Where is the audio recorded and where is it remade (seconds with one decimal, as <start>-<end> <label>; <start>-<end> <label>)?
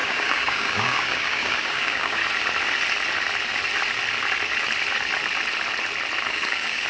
0.0-2.2 remade; 2.2-6.3 recorded; 6.3-6.9 remade